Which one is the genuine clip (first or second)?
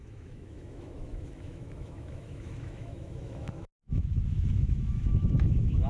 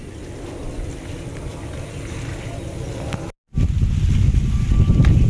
second